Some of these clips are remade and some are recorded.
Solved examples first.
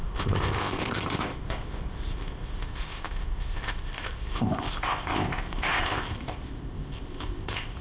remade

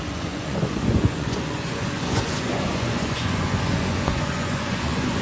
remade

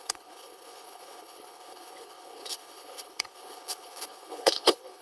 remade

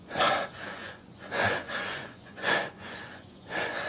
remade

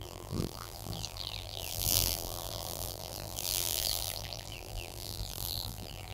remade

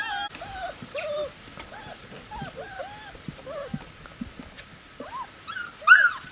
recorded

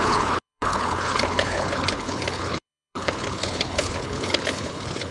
remade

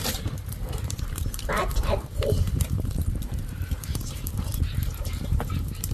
remade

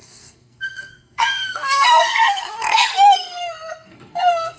remade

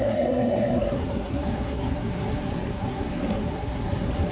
remade